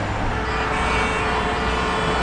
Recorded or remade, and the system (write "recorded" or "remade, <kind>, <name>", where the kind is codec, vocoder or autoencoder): recorded